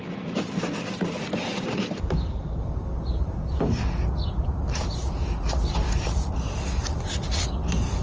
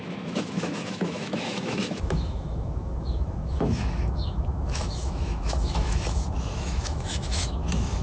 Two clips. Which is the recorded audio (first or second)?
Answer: first